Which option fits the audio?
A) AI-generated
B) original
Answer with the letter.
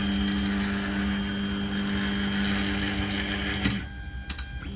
B